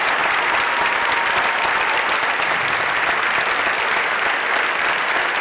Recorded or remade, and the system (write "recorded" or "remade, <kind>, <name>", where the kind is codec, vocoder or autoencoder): recorded